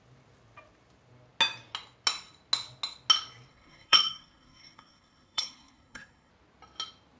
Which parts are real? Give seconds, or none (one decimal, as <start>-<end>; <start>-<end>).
0.0-3.5; 6.3-7.2

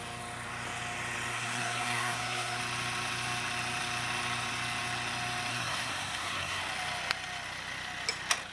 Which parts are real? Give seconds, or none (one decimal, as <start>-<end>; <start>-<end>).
0.0-1.3; 2.6-5.5; 6.6-8.5